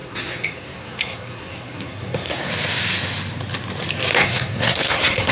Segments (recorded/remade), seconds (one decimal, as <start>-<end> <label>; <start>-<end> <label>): 0.0-2.5 remade; 2.5-4.1 recorded; 4.1-5.3 remade